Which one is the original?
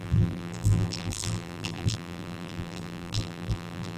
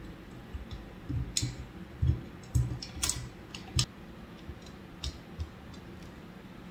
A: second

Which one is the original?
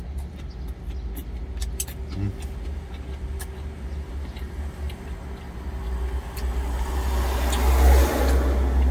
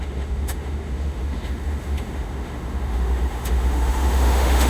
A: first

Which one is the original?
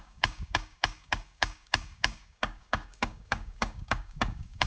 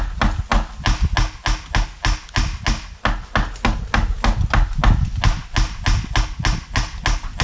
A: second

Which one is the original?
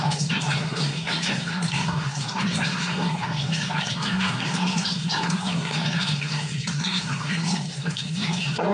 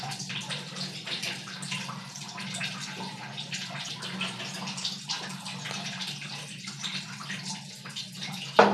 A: second